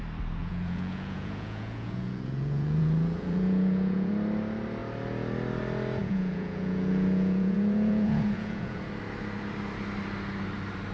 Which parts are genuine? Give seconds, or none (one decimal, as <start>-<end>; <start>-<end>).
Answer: 0.0-0.4; 4.1-6.0; 8.8-10.9